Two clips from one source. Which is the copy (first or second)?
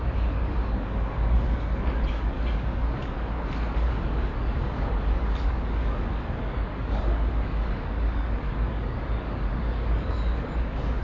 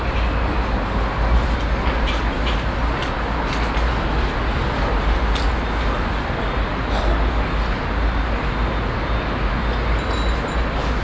first